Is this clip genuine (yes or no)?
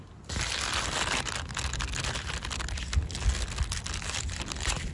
yes